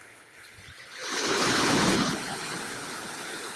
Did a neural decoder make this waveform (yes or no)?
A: yes